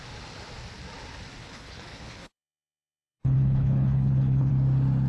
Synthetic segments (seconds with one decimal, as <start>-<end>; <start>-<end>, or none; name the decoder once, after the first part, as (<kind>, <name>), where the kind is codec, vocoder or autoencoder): 1.4-4.5 (codec, HILCodec)